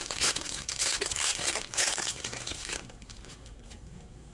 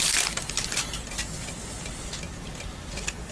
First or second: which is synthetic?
first